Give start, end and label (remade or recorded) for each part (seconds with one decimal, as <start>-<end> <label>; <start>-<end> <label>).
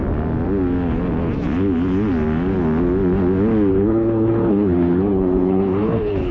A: 0.0-3.7 recorded; 3.7-6.3 remade